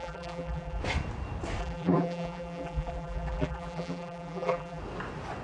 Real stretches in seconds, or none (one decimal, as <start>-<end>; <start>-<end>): 0.8-1.6; 4.8-5.4